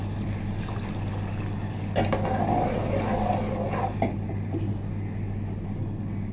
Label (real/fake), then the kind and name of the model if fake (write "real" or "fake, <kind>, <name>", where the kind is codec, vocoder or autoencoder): real